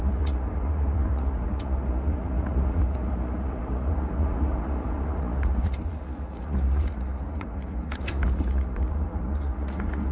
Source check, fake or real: fake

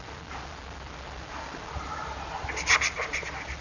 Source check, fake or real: real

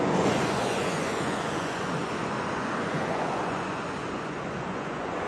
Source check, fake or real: fake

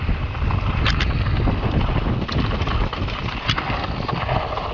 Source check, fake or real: real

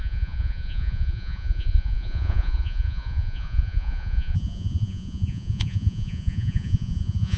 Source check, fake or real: fake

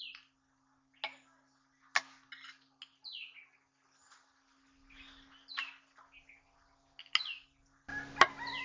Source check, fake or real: real